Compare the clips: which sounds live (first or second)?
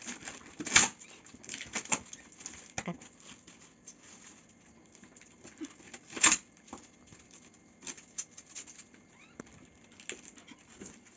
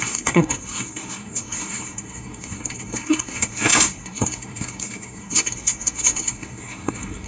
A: first